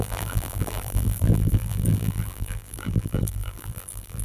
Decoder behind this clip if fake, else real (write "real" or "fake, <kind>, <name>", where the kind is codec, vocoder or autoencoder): fake, vocoder, BigVGAN v2